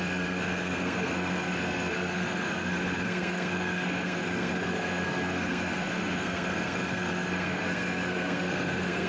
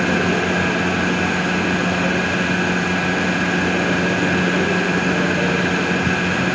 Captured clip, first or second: second